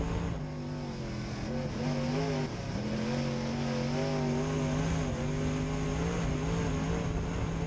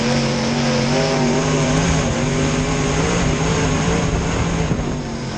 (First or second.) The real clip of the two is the first